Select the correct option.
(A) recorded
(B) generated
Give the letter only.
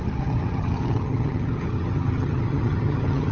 B